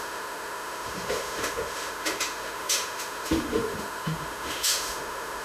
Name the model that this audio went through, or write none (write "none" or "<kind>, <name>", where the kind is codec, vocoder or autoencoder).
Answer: autoencoder, DAC-VAE